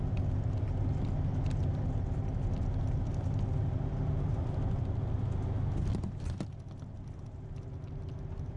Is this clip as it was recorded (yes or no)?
yes